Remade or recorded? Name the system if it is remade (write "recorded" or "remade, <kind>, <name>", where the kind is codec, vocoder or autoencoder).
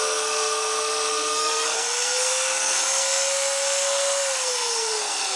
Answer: remade, codec, SNAC